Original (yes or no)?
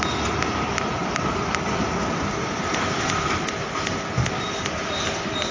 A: yes